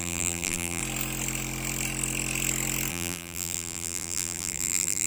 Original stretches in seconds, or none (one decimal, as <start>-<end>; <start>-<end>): 0.8-2.9